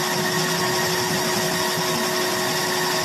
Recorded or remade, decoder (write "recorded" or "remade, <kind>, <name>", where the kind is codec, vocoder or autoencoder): recorded